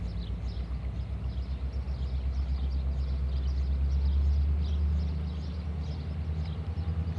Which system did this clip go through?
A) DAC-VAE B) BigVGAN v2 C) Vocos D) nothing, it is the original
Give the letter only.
D